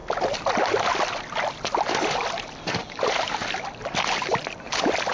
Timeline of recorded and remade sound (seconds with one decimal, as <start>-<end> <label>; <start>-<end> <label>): 0.0-5.1 recorded

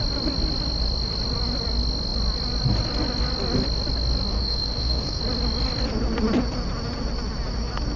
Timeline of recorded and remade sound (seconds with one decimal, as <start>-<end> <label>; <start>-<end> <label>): 0.0-4.3 recorded; 4.3-5.2 remade; 5.2-8.0 recorded

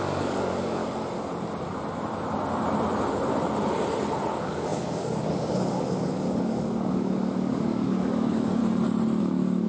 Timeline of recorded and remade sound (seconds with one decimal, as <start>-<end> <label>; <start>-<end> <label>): 0.0-0.8 remade; 0.8-4.3 recorded; 4.3-8.6 remade; 8.6-9.2 recorded; 9.2-9.7 remade

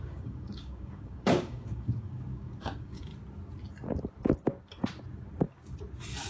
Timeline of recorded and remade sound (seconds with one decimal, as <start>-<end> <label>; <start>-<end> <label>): 0.0-3.1 remade; 3.1-6.3 recorded

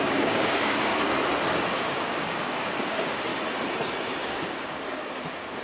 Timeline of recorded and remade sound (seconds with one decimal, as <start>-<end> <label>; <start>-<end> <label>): 0.0-0.9 remade; 0.9-1.8 recorded; 1.8-3.3 remade; 3.3-4.2 recorded; 4.2-5.6 remade